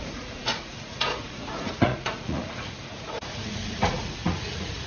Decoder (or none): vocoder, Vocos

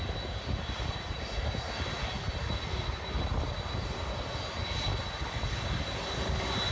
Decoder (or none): none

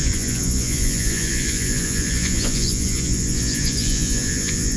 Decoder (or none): vocoder, Vocos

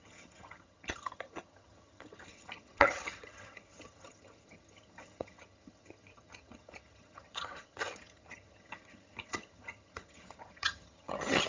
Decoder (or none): vocoder, HiFi-GAN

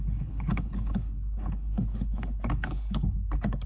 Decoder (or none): codec, HILCodec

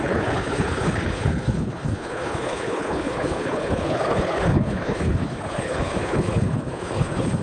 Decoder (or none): codec, HILCodec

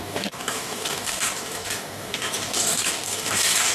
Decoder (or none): codec, DAC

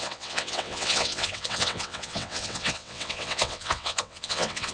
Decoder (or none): vocoder, WaveNeXt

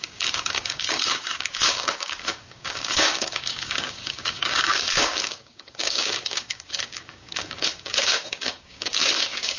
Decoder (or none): codec, DAC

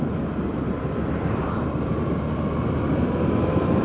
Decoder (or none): none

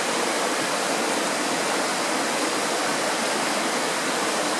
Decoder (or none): vocoder, BigVGAN v2